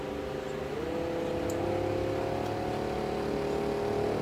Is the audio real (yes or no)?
yes